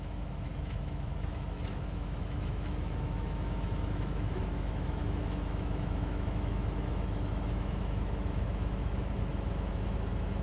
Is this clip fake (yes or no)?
yes